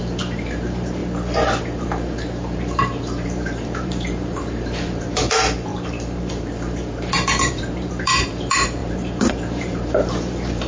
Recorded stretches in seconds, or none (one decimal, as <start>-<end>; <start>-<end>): 1.0-1.6